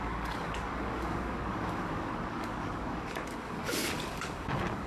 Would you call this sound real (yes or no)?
no